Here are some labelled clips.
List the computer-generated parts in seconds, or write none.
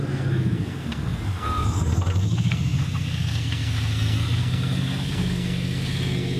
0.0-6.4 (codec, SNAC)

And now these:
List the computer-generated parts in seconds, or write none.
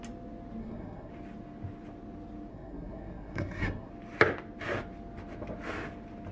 0.6-1.1 (codec, SNAC); 2.5-3.9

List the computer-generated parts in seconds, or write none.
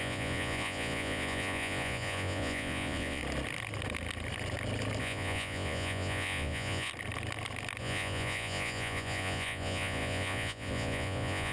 0.0-3.2 (vocoder, Vocos); 5.0-6.9; 7.8-11.5